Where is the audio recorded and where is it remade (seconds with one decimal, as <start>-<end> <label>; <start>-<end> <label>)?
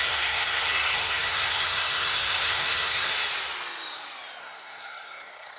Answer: 0.0-3.1 remade; 3.1-4.4 recorded; 4.4-5.6 remade